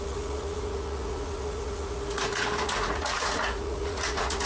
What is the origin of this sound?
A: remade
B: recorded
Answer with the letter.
A